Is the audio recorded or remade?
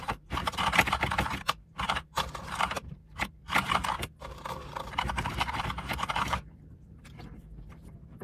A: remade